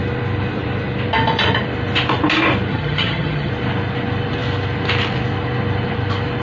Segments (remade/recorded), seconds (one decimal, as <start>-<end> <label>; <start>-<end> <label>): 0.0-2.7 recorded; 2.7-3.5 remade; 3.5-6.4 recorded